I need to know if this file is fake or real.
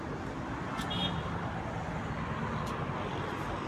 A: real